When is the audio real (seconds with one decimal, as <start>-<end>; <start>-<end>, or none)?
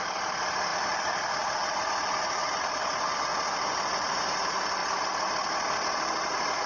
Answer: 0.0-6.7